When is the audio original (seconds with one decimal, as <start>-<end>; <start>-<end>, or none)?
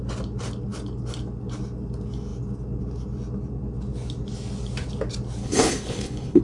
0.0-5.4